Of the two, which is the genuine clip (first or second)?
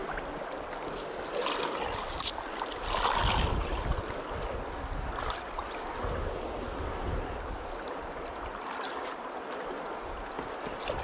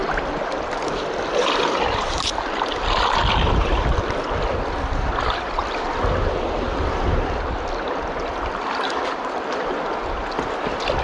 first